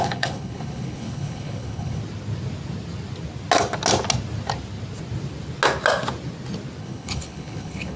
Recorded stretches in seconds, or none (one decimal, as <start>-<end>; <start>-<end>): 2.0-6.8